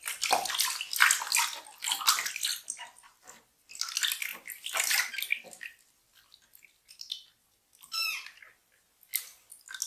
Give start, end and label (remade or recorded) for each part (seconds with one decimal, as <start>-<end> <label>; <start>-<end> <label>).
0.0-2.5 recorded; 2.5-3.5 remade; 3.5-4.3 recorded; 4.3-5.1 remade; 5.1-9.9 recorded